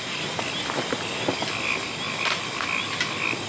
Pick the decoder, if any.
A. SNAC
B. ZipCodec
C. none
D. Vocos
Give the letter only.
C